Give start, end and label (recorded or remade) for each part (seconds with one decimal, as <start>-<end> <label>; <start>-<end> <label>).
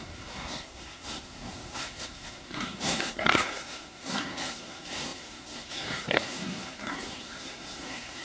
0.0-8.2 remade